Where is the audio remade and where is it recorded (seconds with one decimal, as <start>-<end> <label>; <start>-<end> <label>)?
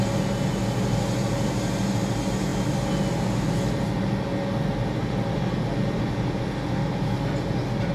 0.0-7.9 recorded